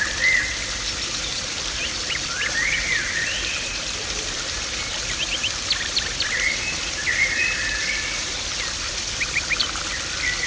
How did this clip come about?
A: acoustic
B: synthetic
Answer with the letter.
B